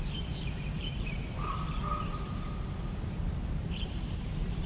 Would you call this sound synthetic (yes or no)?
yes